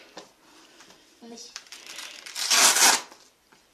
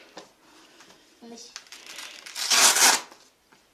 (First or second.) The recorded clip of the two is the second